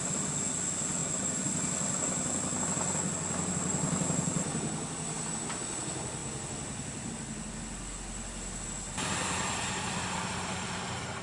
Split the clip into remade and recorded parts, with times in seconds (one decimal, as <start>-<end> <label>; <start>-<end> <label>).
0.0-11.2 recorded